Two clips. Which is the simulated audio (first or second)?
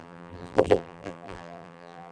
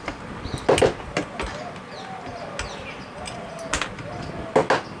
first